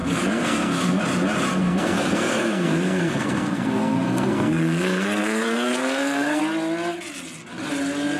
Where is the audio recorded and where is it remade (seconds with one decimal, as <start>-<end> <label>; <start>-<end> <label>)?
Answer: 0.0-1.0 remade; 1.0-1.5 recorded; 1.5-6.4 remade; 6.4-8.2 recorded